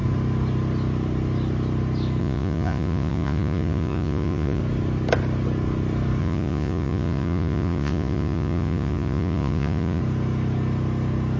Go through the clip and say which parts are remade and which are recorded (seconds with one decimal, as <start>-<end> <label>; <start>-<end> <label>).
0.0-2.2 recorded; 2.2-4.6 remade; 4.6-6.2 recorded; 6.2-10.0 remade; 10.0-11.4 recorded